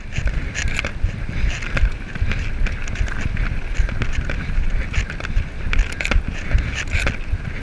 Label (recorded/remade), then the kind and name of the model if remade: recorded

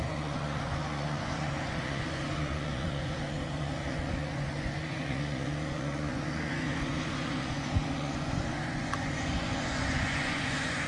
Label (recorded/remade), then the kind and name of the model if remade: remade, vocoder, Vocos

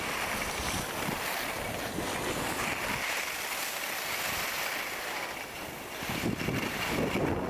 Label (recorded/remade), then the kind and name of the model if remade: recorded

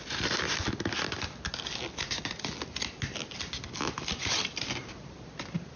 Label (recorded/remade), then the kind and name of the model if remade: recorded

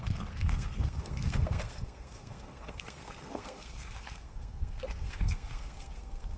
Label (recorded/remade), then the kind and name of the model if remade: remade, codec, SNAC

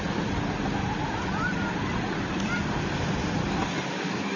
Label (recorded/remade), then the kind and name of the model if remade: remade, vocoder, BigVGAN v2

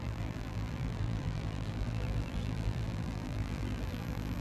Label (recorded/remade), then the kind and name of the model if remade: remade, vocoder, BigVGAN v2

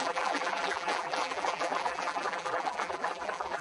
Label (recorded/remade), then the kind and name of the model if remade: remade, vocoder, BigVGAN v2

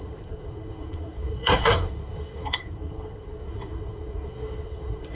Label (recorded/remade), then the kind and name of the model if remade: remade, codec, SNAC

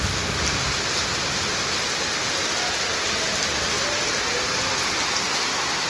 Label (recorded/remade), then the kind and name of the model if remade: recorded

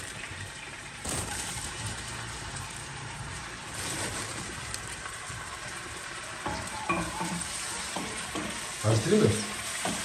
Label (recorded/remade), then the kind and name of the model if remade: remade, vocoder, BigVGAN v2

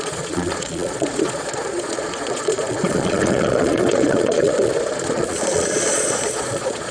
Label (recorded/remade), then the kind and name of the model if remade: remade, vocoder, Vocos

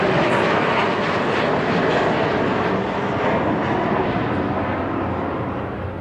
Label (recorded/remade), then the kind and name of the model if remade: recorded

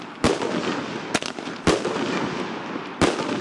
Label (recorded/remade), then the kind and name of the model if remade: recorded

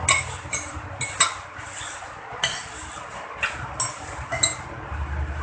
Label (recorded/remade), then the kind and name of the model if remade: recorded